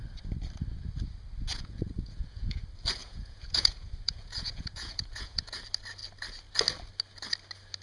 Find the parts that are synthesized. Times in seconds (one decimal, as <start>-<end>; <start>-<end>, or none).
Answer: 1.5-2.6; 3.0-5.6